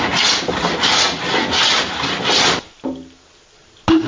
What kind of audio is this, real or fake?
real